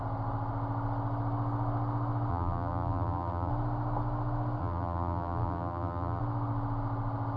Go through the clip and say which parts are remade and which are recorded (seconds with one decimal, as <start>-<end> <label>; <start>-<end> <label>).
0.0-2.3 recorded; 2.3-3.5 remade; 3.5-4.6 recorded; 4.6-6.2 remade; 6.2-7.4 recorded